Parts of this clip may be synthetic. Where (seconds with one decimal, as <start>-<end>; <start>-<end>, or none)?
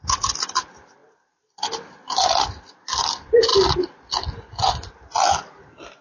none